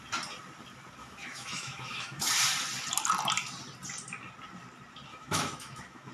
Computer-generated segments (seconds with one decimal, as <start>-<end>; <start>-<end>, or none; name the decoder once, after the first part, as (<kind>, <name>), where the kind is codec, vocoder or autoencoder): 1.0-2.3 (autoencoder, DAC-VAE); 5.1-6.1